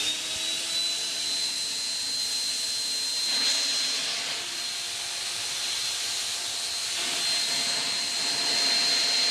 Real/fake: real